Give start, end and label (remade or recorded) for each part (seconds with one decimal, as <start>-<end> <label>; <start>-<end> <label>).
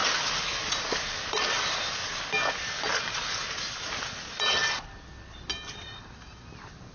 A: 0.0-6.9 recorded